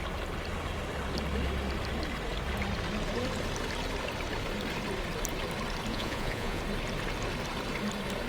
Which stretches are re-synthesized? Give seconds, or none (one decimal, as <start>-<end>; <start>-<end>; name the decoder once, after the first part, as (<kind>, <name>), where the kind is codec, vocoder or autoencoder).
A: 5.9-6.6 (vocoder, Vocos)